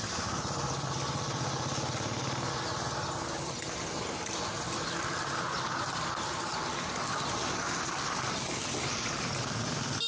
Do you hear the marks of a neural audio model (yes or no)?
no